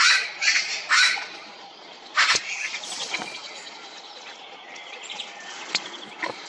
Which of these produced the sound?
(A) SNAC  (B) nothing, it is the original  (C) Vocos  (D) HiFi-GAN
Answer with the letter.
C